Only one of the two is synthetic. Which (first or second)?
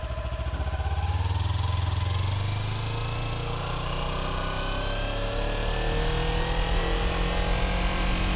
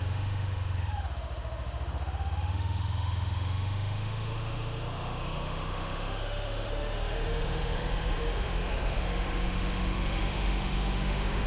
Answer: second